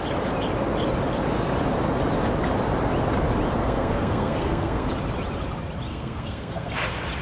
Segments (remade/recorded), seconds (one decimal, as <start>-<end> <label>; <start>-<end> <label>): 0.0-3.6 recorded; 3.6-4.9 remade; 4.9-5.9 recorded; 5.9-6.7 remade; 6.7-7.2 recorded